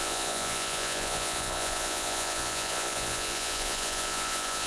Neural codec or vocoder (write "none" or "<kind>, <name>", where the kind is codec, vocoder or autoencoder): vocoder, Vocos